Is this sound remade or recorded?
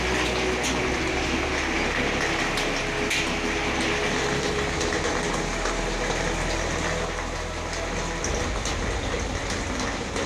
recorded